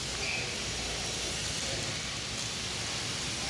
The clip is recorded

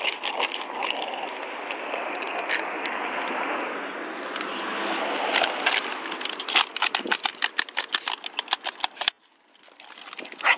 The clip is recorded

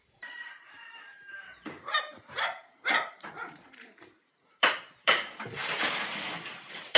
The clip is remade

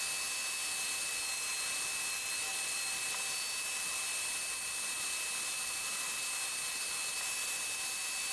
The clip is recorded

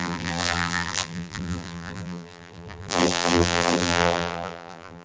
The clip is remade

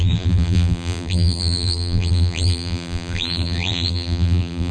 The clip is remade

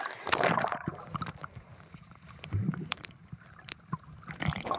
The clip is remade